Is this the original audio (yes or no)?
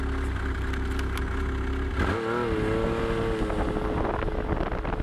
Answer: yes